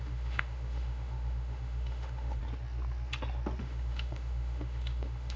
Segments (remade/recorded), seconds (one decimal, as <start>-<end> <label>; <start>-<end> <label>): 0.0-2.4 remade; 2.4-3.6 recorded; 3.6-5.4 remade